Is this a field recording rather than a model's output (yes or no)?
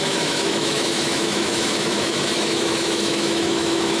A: no